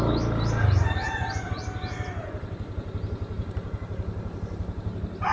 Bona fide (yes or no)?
yes